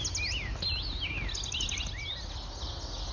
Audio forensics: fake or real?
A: real